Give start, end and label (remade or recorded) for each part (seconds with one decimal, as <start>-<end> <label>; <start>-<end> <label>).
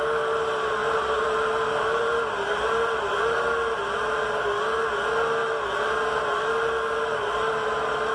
0.0-0.8 recorded; 0.8-3.8 remade; 3.8-8.1 recorded